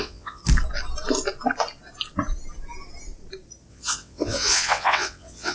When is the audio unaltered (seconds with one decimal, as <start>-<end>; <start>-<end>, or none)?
0.4-3.7